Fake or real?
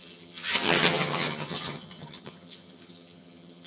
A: fake